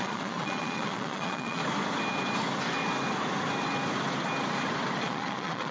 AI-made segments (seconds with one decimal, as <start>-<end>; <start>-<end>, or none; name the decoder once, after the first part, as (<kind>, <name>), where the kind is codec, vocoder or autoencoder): 0.0-1.6 (vocoder, Vocos); 5.0-5.7